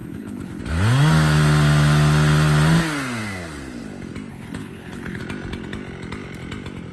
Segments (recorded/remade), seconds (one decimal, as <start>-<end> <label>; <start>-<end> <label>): 0.0-0.6 remade; 0.6-4.3 recorded; 4.3-5.2 remade; 5.2-6.9 recorded